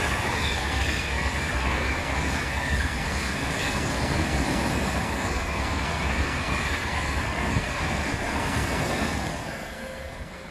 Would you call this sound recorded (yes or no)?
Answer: no